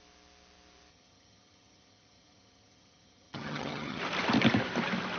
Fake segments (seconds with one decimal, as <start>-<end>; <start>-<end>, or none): 0.9-4.0